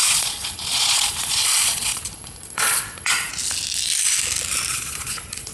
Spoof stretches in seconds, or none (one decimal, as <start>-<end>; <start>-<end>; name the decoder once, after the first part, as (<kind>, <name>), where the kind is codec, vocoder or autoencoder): 0.0-3.3 (vocoder, Vocos); 4.7-5.5